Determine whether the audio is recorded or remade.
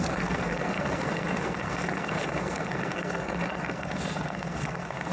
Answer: remade